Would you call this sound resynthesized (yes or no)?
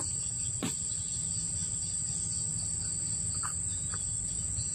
no